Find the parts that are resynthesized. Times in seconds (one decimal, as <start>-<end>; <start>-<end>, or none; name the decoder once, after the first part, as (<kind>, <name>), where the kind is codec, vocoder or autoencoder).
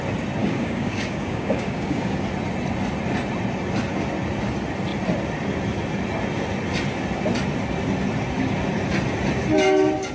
0.4-2.2 (codec, DAC)